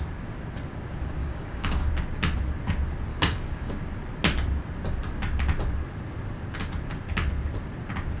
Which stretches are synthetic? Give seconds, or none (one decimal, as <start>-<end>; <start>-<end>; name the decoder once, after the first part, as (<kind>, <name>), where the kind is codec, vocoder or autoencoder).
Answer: 1.2-1.9 (codec, DAC); 3.1-3.7